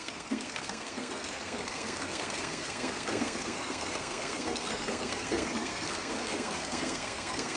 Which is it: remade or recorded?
remade